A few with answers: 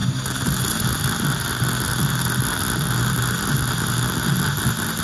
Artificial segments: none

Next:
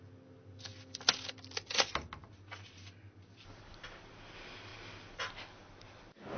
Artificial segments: none

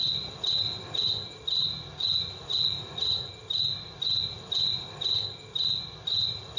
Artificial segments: 1.7-3.3 (vocoder, Vocos)